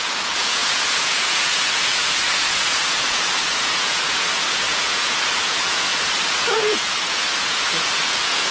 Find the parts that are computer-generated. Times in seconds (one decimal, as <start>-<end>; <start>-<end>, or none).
0.0-8.5

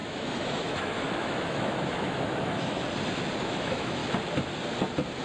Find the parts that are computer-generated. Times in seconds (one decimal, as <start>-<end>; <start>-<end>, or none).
0.0-2.8; 3.4-4.0

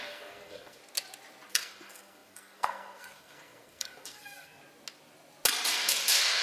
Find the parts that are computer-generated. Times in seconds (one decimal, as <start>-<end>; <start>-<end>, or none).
0.0-0.8; 1.5-4.6; 5.7-6.4

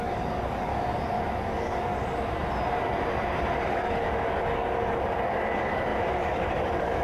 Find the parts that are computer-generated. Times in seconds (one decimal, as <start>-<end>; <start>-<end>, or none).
0.0-0.7; 1.4-1.9; 3.7-7.0